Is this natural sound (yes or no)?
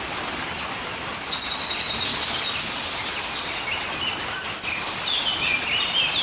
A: yes